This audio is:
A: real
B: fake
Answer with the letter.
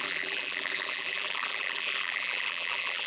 B